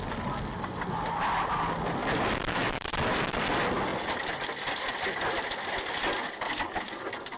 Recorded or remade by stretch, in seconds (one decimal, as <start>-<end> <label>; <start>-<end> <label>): 0.0-2.0 recorded; 2.0-3.4 remade; 3.4-3.9 recorded; 3.9-5.2 remade; 5.2-7.4 recorded